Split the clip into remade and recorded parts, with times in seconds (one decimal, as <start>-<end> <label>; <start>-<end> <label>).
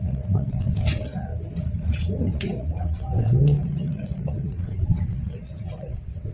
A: 0.0-1.3 remade; 1.3-1.9 recorded; 1.9-6.3 remade